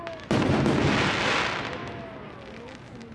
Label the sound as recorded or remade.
recorded